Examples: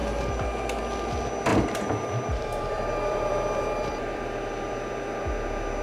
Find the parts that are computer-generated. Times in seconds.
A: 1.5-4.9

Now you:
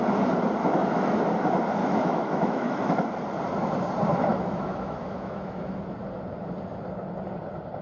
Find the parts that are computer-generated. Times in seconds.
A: 0.6-1.2; 1.8-3.1; 4.3-5.8

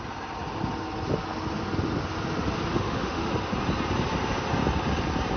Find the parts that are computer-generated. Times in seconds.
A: 2.7-3.3

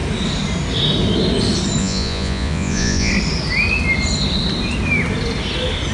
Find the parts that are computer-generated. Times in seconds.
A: 1.8-3.1